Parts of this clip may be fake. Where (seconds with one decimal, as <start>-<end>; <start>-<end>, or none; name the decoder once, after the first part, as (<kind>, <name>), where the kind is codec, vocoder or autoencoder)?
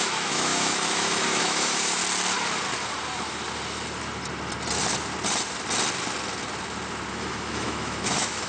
0.0-2.0 (autoencoder, DAC-VAE); 7.1-8.5